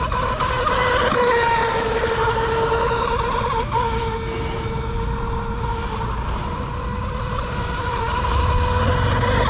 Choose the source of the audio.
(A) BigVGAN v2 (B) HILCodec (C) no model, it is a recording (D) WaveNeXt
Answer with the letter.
C